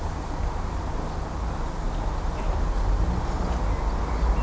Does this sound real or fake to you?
real